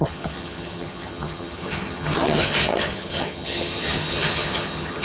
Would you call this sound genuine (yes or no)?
no